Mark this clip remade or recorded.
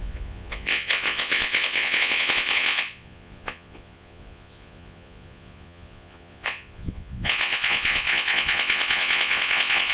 remade